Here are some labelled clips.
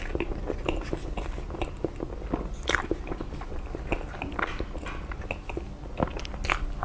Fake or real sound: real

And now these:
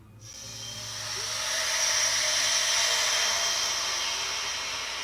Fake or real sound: real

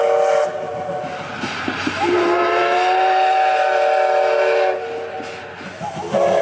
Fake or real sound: real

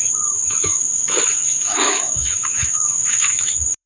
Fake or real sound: fake